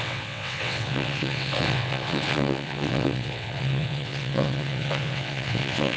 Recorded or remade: remade